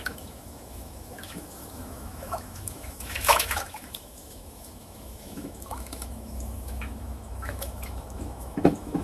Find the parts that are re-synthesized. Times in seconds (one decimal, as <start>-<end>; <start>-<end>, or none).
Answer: 0.0-9.0